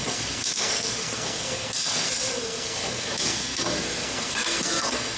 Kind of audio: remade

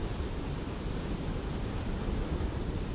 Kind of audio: remade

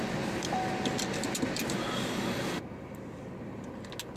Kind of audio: recorded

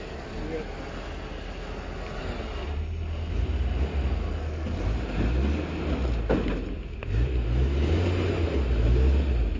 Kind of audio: recorded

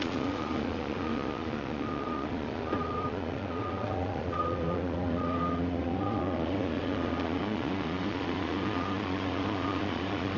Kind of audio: remade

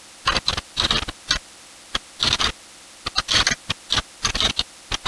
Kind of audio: recorded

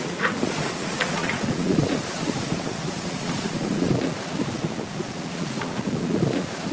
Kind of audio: remade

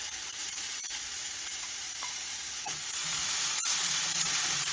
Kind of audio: remade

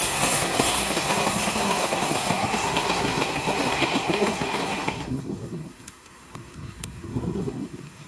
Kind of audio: remade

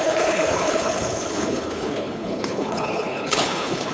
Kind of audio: remade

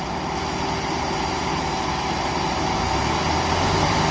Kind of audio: recorded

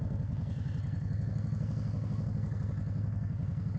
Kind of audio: remade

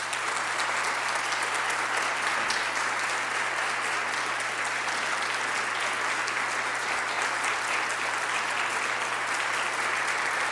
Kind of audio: recorded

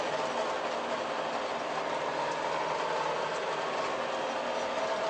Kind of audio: recorded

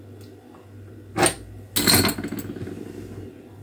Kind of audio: recorded